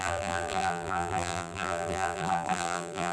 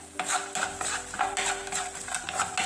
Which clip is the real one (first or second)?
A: second